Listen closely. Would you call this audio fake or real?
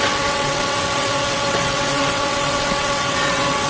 fake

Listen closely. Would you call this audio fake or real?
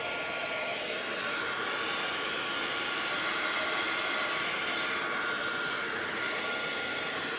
real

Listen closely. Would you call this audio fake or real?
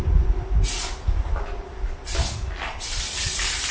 real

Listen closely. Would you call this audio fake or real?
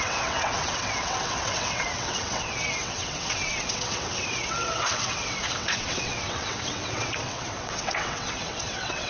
fake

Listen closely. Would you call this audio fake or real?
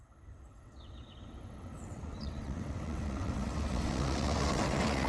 fake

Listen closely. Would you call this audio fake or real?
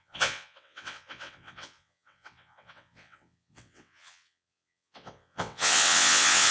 fake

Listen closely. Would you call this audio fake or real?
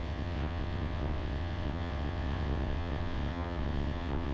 fake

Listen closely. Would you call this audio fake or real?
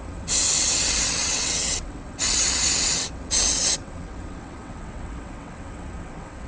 fake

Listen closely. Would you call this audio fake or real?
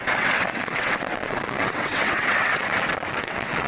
fake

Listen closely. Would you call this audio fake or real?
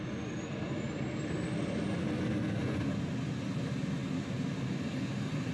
real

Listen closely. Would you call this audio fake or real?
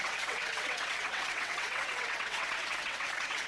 fake